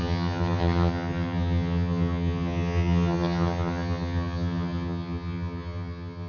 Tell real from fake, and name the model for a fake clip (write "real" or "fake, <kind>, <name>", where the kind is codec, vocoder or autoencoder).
fake, vocoder, HiFi-GAN